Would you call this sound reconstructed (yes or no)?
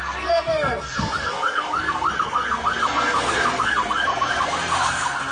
yes